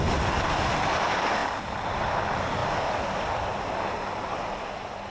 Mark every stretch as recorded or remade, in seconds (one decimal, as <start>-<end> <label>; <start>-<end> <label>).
0.0-5.1 recorded